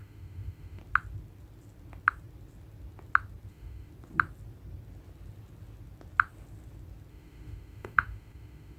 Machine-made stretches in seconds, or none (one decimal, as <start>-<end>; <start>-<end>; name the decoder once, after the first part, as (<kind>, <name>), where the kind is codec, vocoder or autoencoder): 0.0-0.8 (autoencoder, DAC-VAE); 3.5-3.9; 7.1-8.8